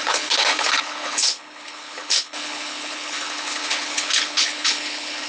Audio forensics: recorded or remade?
remade